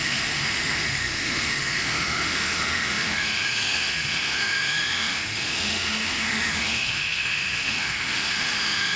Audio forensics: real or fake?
fake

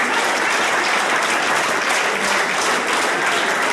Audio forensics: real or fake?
real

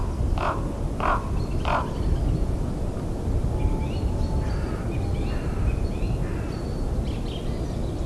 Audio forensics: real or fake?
real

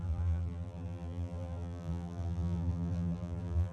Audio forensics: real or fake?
fake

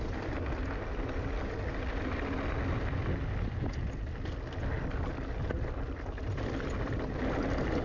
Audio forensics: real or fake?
real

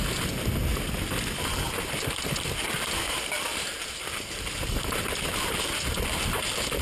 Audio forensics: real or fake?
real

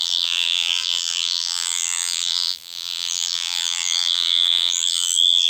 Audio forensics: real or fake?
fake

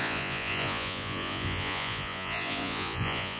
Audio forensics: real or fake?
fake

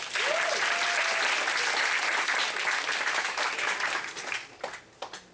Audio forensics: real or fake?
real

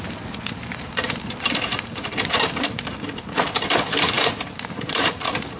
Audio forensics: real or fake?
fake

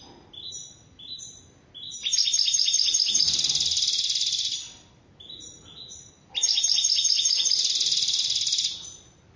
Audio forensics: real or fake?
real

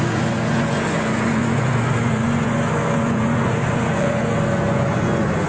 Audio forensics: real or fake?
fake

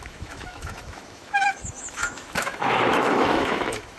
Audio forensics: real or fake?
fake